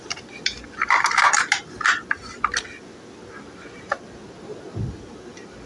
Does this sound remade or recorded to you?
recorded